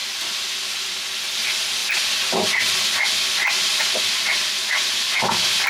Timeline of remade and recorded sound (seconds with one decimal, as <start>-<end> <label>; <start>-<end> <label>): 0.0-5.7 recorded